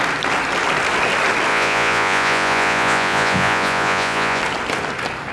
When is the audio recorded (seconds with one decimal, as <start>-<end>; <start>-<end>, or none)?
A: 0.0-1.5; 4.4-5.3